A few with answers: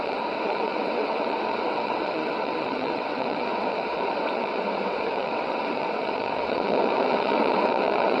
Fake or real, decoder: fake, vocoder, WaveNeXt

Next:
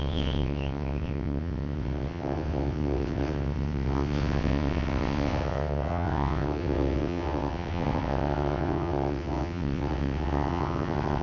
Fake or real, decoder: fake, vocoder, WaveNeXt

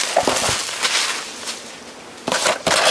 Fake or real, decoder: real